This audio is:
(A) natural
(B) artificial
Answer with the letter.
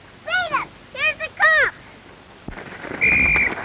A